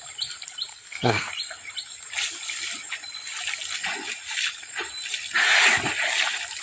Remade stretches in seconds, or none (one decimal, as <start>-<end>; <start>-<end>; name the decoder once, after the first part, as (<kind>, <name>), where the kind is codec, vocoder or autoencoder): 0.7-1.3 (codec, SNAC)

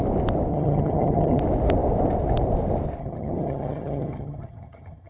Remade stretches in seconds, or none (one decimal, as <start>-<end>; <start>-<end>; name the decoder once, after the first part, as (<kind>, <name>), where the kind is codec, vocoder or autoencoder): 0.5-1.4 (vocoder, HiFi-GAN); 3.0-5.1

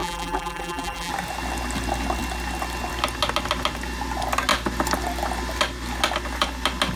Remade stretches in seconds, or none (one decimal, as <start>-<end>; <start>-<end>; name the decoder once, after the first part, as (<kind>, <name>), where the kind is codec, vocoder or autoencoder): 0.0-1.1 (vocoder, BigVGAN v2)

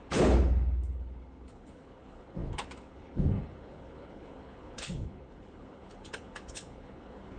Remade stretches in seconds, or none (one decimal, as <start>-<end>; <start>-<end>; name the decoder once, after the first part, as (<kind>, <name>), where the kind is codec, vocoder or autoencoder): 0.0-7.4 (codec, HILCodec)

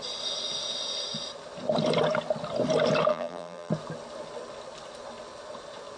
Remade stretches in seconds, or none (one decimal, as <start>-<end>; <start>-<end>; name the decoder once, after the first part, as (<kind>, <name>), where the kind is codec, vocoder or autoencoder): 3.1-3.7 (vocoder, BigVGAN v2)

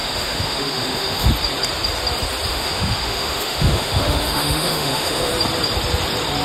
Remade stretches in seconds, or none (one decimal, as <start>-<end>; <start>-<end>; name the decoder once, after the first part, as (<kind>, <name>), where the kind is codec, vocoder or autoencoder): 0.0-1.3 (autoencoder, DAC-VAE); 2.5-5.3

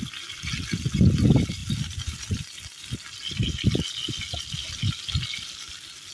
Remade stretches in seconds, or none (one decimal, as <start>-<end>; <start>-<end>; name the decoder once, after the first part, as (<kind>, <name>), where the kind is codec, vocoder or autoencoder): none